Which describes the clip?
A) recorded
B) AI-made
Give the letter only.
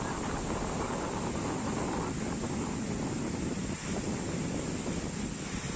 A